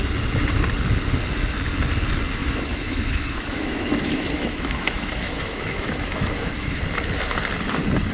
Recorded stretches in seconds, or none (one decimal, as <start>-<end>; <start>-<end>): 0.0-2.4; 6.8-8.1